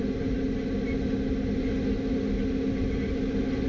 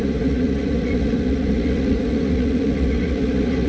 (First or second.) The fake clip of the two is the second